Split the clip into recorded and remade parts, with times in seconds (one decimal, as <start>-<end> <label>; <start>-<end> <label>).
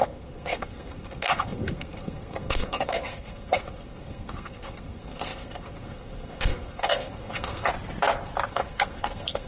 0.0-7.7 remade; 7.7-8.5 recorded; 8.5-9.5 remade